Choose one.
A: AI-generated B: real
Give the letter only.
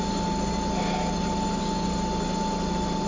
B